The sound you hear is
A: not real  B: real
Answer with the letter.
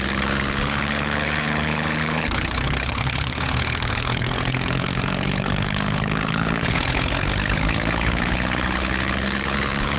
A